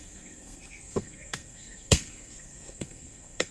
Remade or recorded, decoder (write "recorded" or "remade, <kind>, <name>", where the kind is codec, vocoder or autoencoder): remade, codec, SNAC